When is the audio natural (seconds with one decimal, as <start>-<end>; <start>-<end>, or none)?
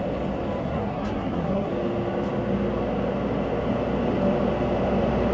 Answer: 0.0-0.6; 1.7-5.3